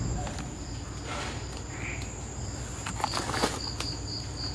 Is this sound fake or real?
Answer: real